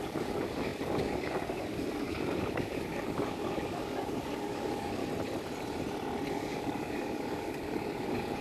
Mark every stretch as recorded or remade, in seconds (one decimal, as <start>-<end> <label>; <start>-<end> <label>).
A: 0.0-5.0 remade; 5.0-6.3 recorded; 6.3-8.4 remade